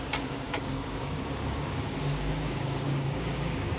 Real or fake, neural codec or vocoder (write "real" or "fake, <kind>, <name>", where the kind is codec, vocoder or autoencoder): fake, codec, DAC